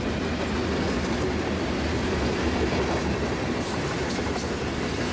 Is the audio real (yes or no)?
yes